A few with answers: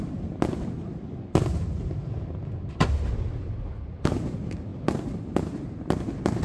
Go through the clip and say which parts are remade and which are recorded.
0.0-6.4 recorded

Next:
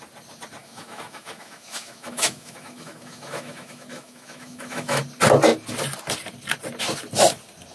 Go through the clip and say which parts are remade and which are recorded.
0.0-0.6 recorded; 0.6-5.0 remade; 5.0-7.7 recorded

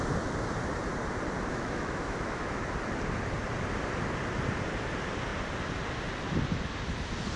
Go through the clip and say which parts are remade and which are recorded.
0.0-1.5 recorded; 1.5-2.6 remade; 2.6-7.4 recorded

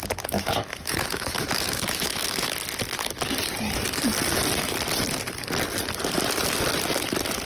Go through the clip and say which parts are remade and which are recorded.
0.0-2.5 remade; 2.5-7.5 recorded

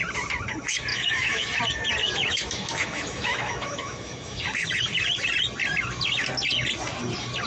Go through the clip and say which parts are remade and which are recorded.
0.0-0.9 recorded; 0.9-1.6 remade; 1.6-2.0 recorded; 2.0-4.4 remade; 4.4-7.5 recorded

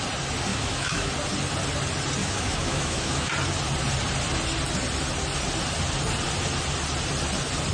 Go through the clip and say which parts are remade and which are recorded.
0.0-0.5 recorded; 0.5-1.1 remade; 1.1-2.2 recorded; 2.2-3.3 remade; 3.3-7.7 recorded

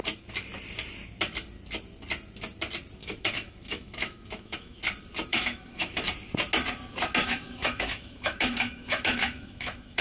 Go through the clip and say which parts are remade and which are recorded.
0.0-3.0 recorded; 3.0-4.8 remade; 4.8-5.3 recorded; 5.3-6.0 remade; 6.0-7.2 recorded; 7.2-10.0 remade